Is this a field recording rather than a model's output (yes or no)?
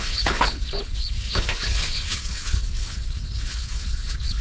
no